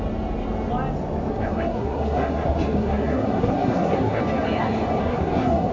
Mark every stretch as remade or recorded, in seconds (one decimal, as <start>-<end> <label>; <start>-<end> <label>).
0.0-1.3 recorded; 1.3-4.2 remade; 4.2-5.0 recorded; 5.0-5.7 remade